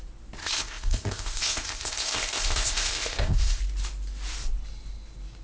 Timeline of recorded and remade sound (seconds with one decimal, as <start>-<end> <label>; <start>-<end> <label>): 0.0-0.4 recorded; 0.4-3.6 remade; 3.6-5.4 recorded